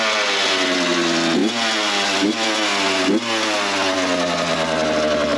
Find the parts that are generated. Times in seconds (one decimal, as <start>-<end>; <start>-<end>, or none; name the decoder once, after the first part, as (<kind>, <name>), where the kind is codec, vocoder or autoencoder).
none